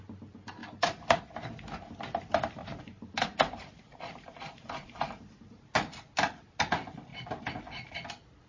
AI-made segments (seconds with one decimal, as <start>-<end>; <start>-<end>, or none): 0.6-1.2; 2.6-5.6